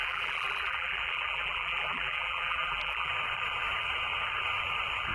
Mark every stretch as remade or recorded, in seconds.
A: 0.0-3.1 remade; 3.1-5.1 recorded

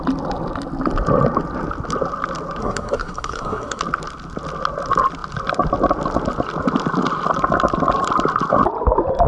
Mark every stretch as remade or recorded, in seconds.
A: 0.0-2.6 recorded; 2.6-3.8 remade; 3.8-9.3 recorded